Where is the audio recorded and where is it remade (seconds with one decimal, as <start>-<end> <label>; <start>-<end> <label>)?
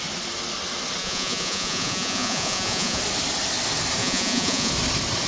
0.0-1.0 recorded; 1.0-3.0 remade; 3.0-4.0 recorded; 4.0-4.7 remade; 4.7-5.3 recorded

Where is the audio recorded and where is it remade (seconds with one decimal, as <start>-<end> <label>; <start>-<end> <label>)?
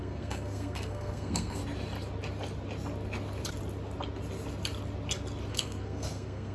0.0-1.6 remade; 1.6-5.5 recorded; 5.5-6.5 remade